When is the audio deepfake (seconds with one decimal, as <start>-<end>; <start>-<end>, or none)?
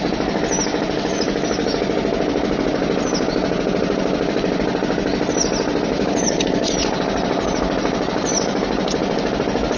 5.9-9.4